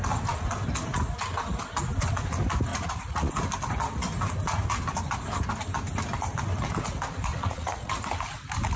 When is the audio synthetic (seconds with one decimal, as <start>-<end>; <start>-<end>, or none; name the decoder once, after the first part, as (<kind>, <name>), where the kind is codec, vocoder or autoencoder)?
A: 2.7-3.3 (vocoder, Vocos); 7.3-7.9